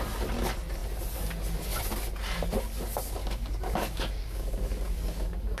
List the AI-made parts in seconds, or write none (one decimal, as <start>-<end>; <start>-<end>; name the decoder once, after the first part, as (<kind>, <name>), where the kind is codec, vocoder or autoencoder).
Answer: 3.2-5.6 (codec, DAC)